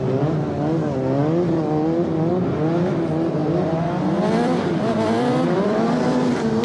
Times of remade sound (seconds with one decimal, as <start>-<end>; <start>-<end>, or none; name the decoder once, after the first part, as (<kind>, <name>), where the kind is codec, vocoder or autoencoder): 3.4-5.8 (vocoder, BigVGAN v2)